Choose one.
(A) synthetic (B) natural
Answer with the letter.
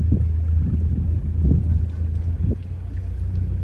B